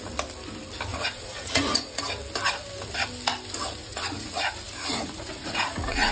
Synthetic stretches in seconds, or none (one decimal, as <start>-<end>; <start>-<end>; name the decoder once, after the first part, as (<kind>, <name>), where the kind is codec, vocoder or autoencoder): 0.9-2.0 (vocoder, Vocos); 3.8-6.1